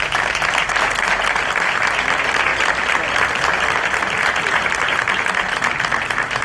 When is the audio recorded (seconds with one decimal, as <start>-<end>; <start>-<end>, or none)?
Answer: 0.0-6.4